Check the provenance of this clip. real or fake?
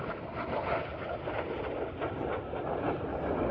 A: real